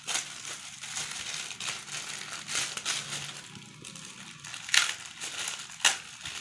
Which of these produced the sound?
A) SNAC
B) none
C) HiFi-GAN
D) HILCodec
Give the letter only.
B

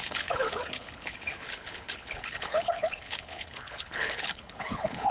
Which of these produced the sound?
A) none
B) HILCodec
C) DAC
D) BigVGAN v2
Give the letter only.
B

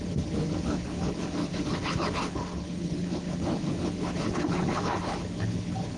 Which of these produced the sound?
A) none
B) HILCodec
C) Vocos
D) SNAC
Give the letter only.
B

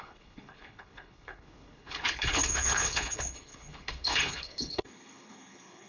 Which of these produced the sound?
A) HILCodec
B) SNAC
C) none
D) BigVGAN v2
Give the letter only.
A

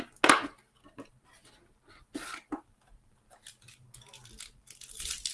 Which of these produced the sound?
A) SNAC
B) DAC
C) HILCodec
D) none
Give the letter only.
D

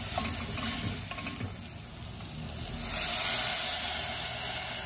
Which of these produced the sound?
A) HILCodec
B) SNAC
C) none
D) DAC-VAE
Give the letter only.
C